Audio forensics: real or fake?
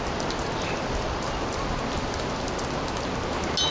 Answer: real